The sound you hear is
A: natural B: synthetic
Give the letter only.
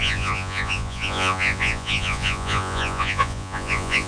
B